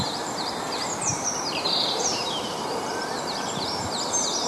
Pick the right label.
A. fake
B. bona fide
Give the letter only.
A